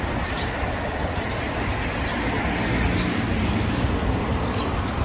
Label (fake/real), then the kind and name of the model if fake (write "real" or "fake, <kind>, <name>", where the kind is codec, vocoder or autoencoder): real